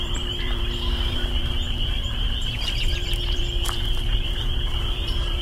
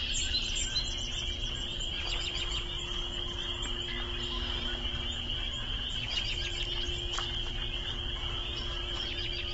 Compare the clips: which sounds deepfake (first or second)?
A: first